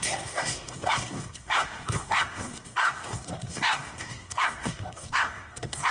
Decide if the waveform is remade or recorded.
remade